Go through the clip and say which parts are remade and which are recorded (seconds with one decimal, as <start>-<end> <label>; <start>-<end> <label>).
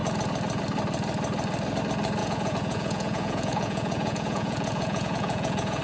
0.0-2.2 recorded; 2.2-5.8 remade